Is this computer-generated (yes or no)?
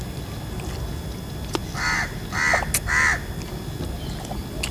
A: no